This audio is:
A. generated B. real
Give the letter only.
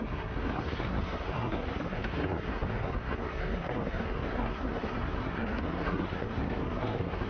A